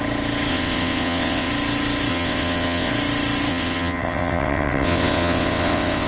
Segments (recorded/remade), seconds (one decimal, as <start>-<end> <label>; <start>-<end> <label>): 0.0-0.5 recorded; 0.5-1.5 remade; 1.5-2.1 recorded; 2.1-2.9 remade; 2.9-3.5 recorded; 3.5-6.1 remade